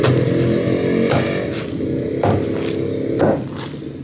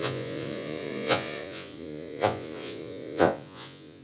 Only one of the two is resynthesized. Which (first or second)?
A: second